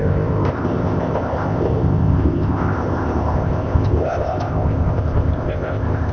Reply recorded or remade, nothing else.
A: remade